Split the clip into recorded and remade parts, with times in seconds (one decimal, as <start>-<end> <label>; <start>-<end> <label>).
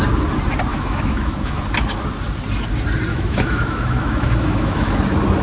0.0-0.7 recorded; 0.7-1.6 remade; 1.6-3.1 recorded; 3.1-5.0 remade; 5.0-5.4 recorded